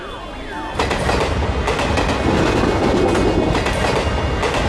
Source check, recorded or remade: recorded